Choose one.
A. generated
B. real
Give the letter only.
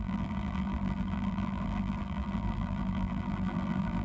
A